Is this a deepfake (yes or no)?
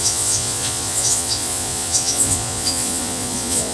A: yes